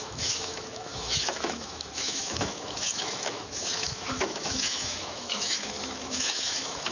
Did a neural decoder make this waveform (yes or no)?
yes